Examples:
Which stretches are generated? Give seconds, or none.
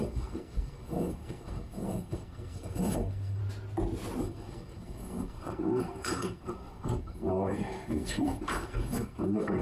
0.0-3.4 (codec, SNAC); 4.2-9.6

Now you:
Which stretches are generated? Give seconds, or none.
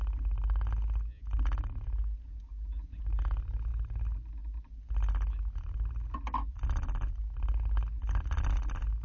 none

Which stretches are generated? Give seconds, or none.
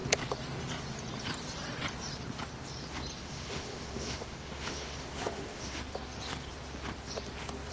3.2-5.8 (autoencoder, DAC-VAE)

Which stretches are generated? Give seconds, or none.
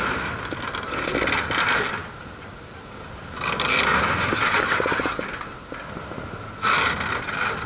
none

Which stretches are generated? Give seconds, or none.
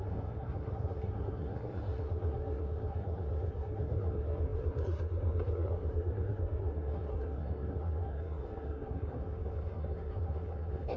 0.0-11.0 (codec, SNAC)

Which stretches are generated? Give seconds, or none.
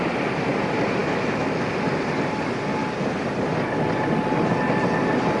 1.0-1.6 (autoencoder, DAC-VAE)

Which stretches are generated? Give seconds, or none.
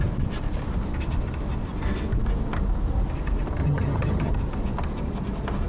3.6-4.3 (vocoder, HiFi-GAN)